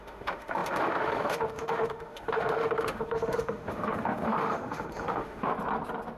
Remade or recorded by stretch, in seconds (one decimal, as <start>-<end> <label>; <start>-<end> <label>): 0.0-5.5 remade; 5.5-6.2 recorded